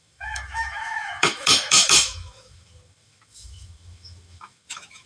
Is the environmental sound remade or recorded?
remade